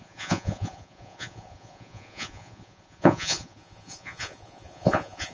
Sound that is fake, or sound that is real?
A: fake